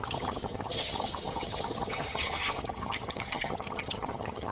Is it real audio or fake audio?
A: fake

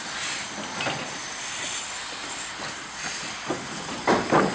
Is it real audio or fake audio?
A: real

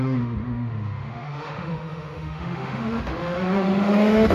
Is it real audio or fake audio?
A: fake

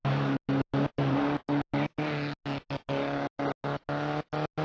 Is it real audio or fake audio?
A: real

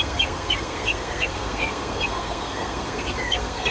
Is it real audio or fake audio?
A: fake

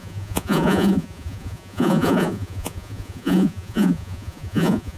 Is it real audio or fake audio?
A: fake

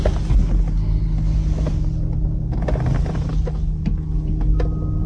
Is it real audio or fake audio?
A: real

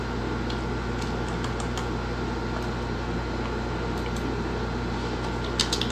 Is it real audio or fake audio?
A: real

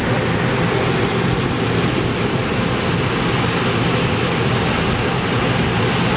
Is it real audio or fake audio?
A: real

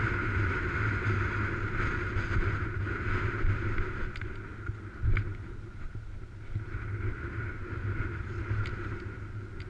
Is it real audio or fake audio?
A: real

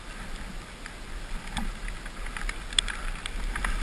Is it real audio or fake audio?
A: real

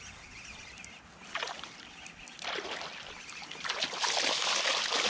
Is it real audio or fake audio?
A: real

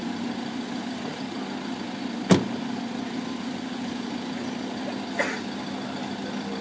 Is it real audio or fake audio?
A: real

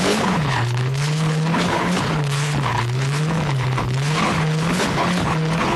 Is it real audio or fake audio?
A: fake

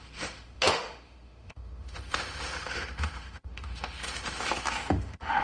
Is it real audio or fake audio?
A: fake